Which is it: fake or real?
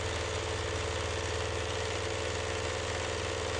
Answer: real